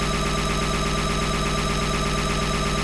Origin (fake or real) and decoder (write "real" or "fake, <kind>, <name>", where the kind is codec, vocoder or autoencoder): real